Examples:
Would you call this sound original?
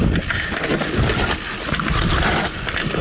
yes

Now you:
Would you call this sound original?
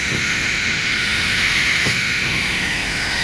no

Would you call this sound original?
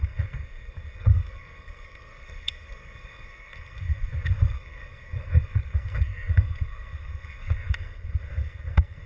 no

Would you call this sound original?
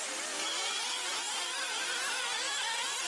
yes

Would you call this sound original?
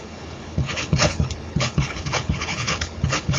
no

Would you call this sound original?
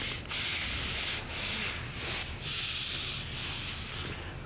yes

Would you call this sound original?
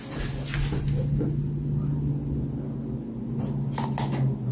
yes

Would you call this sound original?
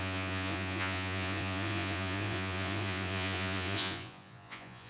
no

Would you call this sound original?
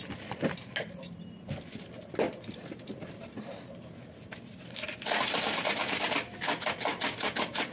yes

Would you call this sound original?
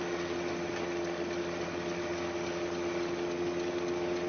yes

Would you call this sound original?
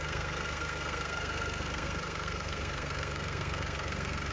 no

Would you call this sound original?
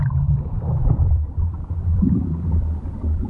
no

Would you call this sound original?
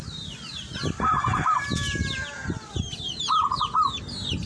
yes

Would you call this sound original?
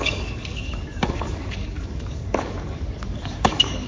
no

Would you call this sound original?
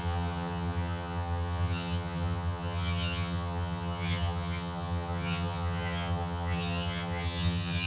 no